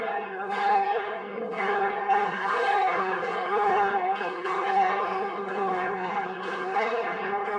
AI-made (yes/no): yes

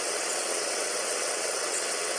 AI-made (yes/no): yes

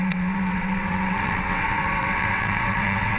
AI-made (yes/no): yes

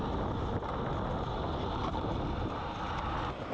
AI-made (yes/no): no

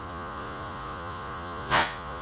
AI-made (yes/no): yes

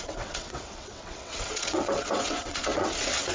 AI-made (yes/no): yes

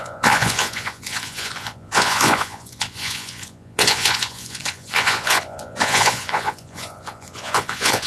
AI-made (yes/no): yes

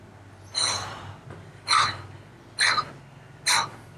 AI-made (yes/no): no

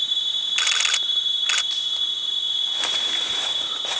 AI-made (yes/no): no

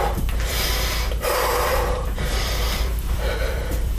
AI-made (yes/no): yes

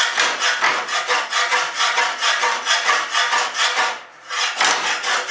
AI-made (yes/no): no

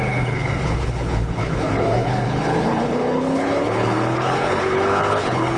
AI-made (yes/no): yes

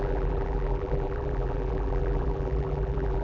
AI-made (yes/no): yes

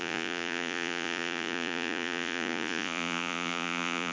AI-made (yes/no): yes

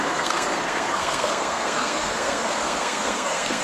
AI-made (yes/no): yes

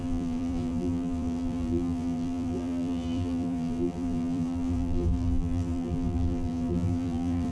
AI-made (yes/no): yes